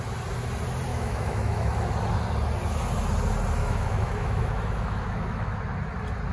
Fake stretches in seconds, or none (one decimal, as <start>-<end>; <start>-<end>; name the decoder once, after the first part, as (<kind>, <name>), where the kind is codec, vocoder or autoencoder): 0.9-1.9 (autoencoder, DAC-VAE); 3.6-5.6